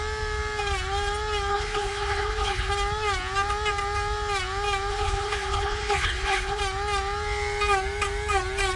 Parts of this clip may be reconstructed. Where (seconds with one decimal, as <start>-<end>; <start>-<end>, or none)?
1.5-2.7; 4.9-6.6